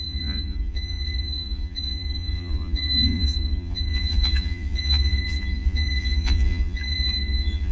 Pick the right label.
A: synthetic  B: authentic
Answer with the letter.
A